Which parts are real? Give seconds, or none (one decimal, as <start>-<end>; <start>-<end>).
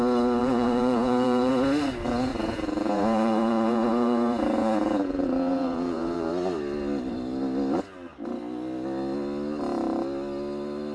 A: 0.0-0.4; 1.5-2.3; 6.3-10.9